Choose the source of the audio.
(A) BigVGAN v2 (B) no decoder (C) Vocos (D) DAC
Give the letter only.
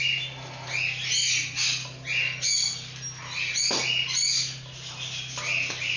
B